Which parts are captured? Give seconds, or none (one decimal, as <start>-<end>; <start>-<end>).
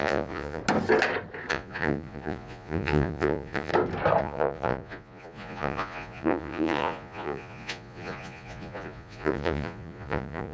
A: 0.6-1.5; 3.7-4.2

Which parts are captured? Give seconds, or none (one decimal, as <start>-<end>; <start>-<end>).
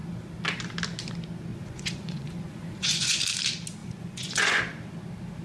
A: 0.0-1.5; 3.2-3.8; 4.6-5.4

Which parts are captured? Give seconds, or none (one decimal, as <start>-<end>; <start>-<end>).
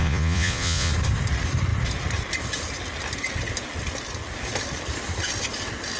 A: 0.9-6.0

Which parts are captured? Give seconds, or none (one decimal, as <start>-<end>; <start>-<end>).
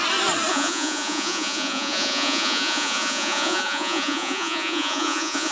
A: 0.0-0.5